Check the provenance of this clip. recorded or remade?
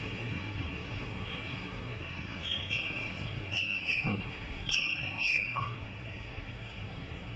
remade